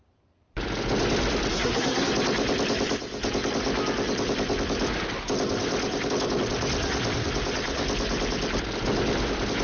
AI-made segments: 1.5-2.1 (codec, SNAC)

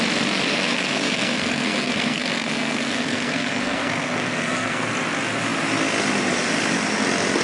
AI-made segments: 0.5-4.9 (codec, SNAC)

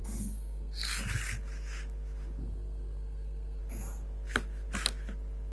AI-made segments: 0.0-1.0 (codec, SNAC); 2.4-3.6

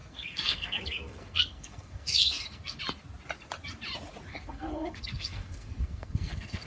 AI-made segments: 0.0-2.8 (codec, SNAC); 4.3-6.7

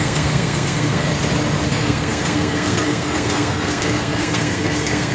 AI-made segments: 0.0-1.1 (codec, SNAC); 1.7-5.1

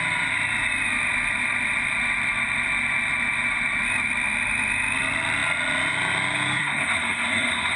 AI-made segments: 6.6-7.8 (codec, SNAC)

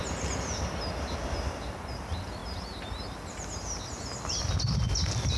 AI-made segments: none

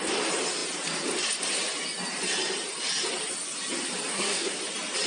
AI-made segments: 4.1-4.6 (codec, SNAC)